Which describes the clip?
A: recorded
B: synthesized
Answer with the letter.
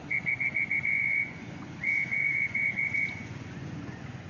B